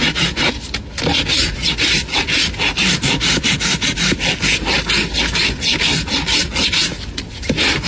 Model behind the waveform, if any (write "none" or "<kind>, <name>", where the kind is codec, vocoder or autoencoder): none